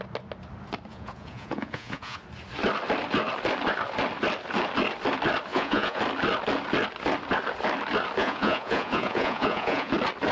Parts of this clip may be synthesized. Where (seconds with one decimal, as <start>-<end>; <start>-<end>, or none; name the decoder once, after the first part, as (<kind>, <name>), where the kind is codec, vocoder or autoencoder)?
0.9-2.2 (vocoder, Vocos); 5.5-6.0; 8.2-9.9